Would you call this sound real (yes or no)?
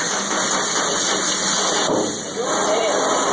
yes